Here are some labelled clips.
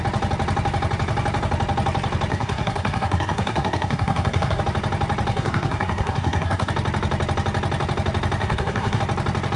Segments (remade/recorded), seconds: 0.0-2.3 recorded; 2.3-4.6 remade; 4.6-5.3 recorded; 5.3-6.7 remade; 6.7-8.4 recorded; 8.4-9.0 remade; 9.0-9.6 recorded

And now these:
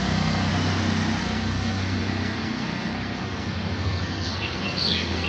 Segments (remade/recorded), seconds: 0.0-0.5 remade; 0.5-1.2 recorded; 1.2-5.3 remade

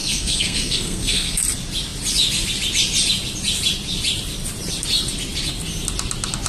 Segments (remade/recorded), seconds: 0.0-1.4 remade; 1.4-6.5 recorded

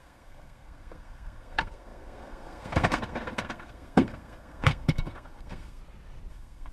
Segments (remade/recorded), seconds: 0.0-5.8 remade; 5.8-6.3 recorded; 6.3-6.7 remade

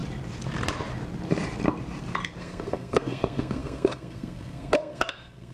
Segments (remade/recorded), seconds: 0.0-2.4 recorded; 2.4-5.5 remade

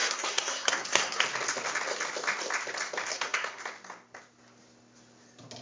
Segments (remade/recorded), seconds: 0.0-1.2 remade; 1.2-3.1 recorded; 3.1-3.6 remade; 3.6-5.6 recorded

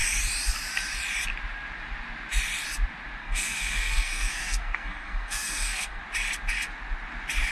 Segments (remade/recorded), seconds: 0.0-3.2 recorded; 3.2-6.0 remade; 6.0-7.5 recorded